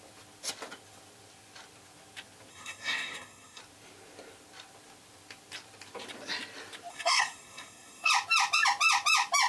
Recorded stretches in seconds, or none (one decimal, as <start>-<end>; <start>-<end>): 0.0-2.5; 3.6-6.9; 8.1-9.5